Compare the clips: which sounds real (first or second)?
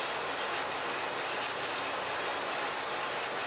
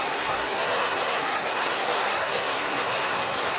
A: first